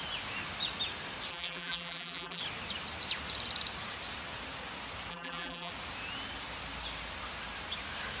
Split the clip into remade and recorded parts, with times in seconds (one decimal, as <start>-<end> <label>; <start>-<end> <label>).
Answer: 0.0-1.3 recorded; 1.3-2.4 remade; 2.4-5.1 recorded; 5.1-5.7 remade; 5.7-8.2 recorded